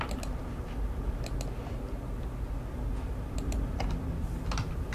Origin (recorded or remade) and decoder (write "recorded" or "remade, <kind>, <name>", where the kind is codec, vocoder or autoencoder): recorded